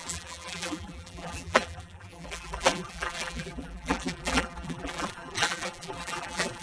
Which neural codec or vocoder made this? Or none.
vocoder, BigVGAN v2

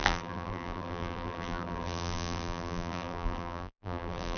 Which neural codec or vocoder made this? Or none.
vocoder, BigVGAN v2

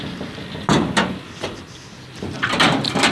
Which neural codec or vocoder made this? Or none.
none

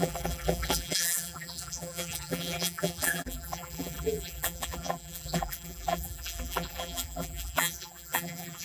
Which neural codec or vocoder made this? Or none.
vocoder, BigVGAN v2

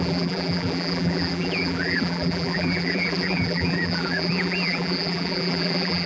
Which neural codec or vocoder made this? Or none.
vocoder, BigVGAN v2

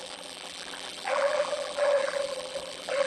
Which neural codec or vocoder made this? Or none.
vocoder, BigVGAN v2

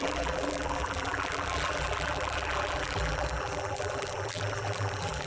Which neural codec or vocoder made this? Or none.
vocoder, BigVGAN v2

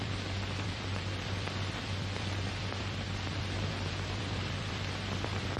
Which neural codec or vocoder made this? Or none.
vocoder, BigVGAN v2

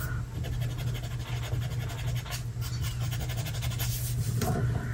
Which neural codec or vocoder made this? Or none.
none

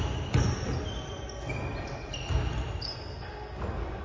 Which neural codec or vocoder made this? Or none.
none